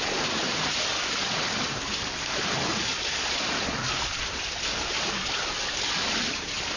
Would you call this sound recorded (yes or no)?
yes